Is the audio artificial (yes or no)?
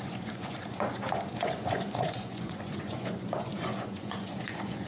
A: yes